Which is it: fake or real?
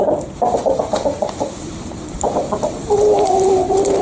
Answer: fake